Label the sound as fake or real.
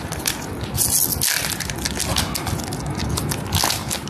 real